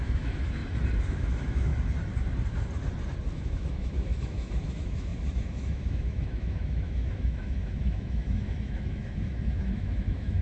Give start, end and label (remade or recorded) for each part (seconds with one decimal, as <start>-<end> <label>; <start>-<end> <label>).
0.0-0.6 remade; 0.6-1.1 recorded; 1.1-1.7 remade; 1.7-3.3 recorded; 3.3-10.4 remade